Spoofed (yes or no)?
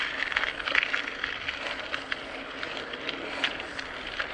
no